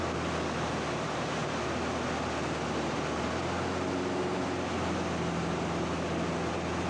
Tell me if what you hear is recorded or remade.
recorded